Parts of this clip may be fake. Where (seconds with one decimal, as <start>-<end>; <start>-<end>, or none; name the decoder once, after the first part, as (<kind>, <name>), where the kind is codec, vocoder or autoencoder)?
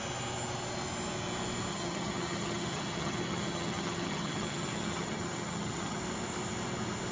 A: 1.7-6.0 (vocoder, HiFi-GAN)